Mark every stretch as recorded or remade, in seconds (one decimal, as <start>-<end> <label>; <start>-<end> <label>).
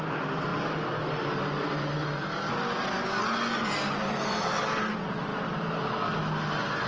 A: 0.0-6.9 recorded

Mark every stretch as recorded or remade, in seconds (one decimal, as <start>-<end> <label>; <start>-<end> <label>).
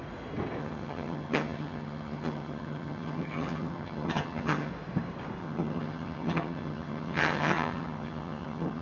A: 0.0-0.6 recorded; 0.6-4.7 remade; 4.7-5.4 recorded; 5.4-8.8 remade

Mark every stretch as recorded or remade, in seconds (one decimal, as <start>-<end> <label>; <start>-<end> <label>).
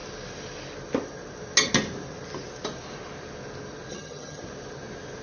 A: 0.0-3.9 recorded; 3.9-4.4 remade; 4.4-5.2 recorded